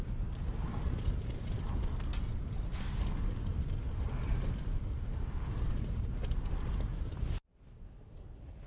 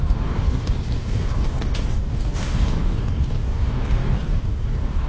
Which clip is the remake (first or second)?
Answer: second